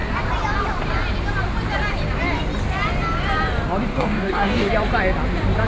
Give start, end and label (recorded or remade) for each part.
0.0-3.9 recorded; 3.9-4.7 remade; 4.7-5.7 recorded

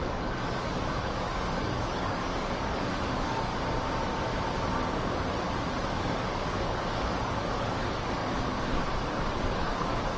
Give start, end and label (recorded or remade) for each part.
0.0-3.5 remade; 3.5-5.8 recorded; 5.8-10.2 remade